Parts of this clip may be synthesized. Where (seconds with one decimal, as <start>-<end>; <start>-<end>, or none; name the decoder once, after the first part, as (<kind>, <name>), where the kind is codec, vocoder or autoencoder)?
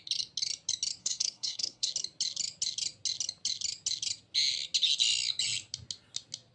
1.0-1.9 (codec, SNAC)